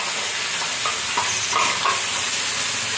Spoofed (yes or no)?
no